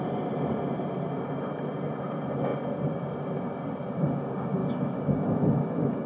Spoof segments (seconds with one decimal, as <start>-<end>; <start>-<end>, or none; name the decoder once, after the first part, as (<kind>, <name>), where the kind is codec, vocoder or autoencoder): 4.6-6.1 (autoencoder, DAC-VAE)